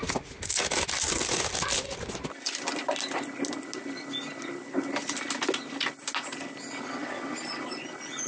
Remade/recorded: recorded